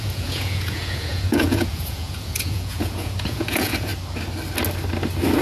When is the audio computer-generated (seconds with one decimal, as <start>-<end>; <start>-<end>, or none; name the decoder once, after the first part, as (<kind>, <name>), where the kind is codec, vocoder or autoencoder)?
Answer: 0.0-3.9 (vocoder, Vocos)